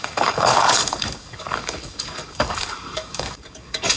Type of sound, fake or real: fake